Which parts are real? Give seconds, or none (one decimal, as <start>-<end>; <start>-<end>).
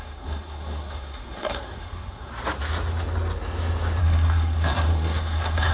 2.3-4.0